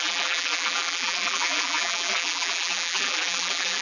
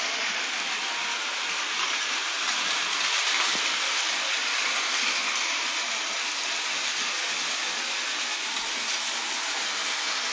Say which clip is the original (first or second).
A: second